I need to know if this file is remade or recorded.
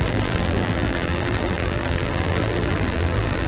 remade